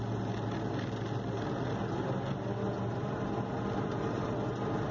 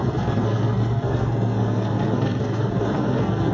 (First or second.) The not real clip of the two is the second